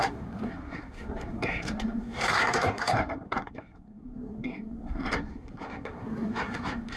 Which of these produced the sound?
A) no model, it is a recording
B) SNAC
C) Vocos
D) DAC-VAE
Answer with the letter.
B